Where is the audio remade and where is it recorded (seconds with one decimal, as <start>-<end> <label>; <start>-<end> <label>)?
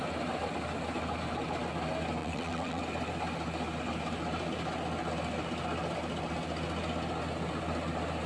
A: 0.0-2.2 recorded; 2.2-2.8 remade; 2.8-8.3 recorded